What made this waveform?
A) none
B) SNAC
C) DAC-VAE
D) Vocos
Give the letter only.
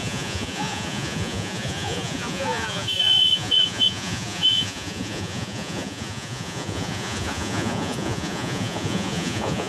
D